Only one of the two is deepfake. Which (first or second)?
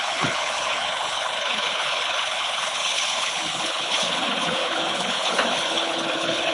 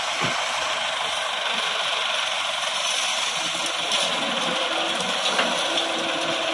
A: first